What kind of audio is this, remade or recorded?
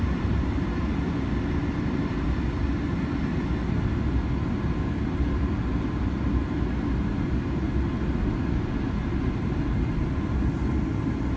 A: recorded